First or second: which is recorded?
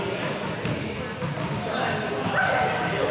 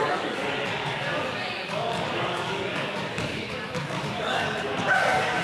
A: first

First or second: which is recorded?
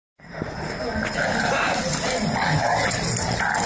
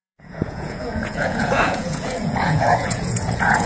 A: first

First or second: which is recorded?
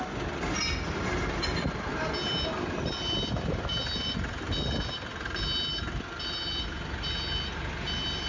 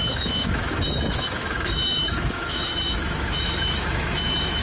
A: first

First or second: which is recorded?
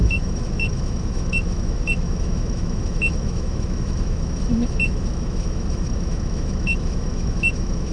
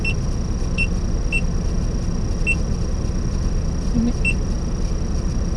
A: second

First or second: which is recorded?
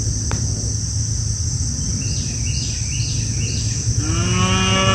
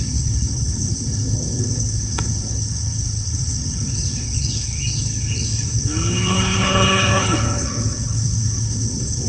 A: first